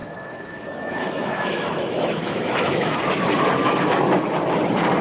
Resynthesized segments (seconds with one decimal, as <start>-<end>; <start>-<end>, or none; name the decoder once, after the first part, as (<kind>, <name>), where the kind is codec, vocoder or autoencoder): 0.0-3.0 (autoencoder, DAC-VAE)